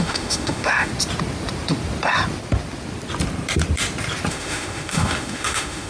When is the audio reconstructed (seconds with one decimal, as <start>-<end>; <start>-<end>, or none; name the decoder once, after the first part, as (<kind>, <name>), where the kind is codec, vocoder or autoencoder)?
0.0-0.9 (autoencoder, DAC-VAE); 4.3-5.9